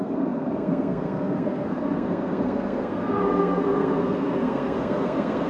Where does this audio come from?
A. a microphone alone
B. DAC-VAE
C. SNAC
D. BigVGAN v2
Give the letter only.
C